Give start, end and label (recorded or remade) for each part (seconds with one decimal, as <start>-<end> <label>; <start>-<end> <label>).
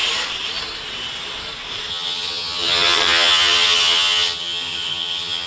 0.0-1.9 recorded; 1.9-5.5 remade